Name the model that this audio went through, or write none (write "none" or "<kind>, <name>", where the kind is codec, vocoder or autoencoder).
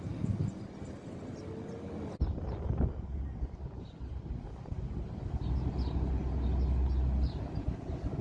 none